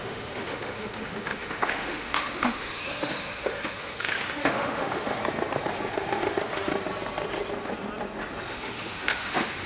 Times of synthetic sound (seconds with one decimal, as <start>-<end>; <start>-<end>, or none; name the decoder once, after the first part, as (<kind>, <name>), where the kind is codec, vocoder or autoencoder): 0.0-5.2 (autoencoder, DAC-VAE); 5.9-6.7; 8.5-9.7